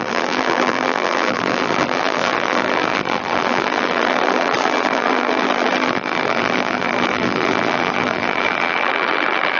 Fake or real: fake